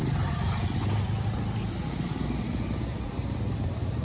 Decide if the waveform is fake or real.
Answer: real